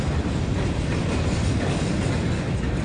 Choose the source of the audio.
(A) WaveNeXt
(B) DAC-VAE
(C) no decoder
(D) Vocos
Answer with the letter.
C